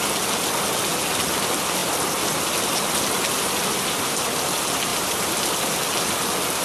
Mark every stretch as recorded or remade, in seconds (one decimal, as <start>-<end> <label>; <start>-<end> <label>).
0.0-1.8 recorded; 1.8-4.4 remade; 4.4-4.9 recorded; 4.9-5.7 remade; 5.7-6.6 recorded